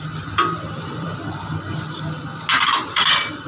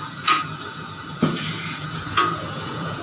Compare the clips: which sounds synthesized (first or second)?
second